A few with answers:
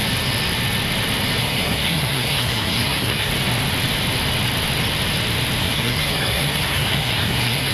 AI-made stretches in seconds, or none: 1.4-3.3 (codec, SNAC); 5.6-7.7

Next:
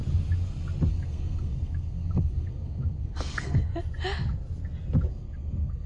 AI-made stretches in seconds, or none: 0.9-3.7 (codec, SNAC); 5.1-5.9

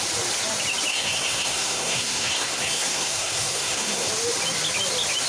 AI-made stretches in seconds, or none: 0.9-4.1 (codec, SNAC)